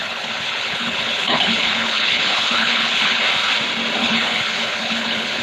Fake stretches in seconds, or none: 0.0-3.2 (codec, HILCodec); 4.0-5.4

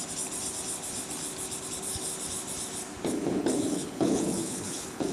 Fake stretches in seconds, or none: 3.1-5.1 (codec, HILCodec)